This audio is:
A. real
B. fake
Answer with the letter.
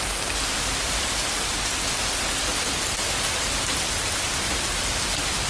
A